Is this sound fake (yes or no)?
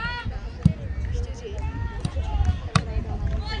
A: no